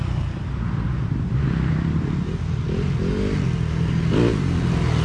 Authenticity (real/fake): real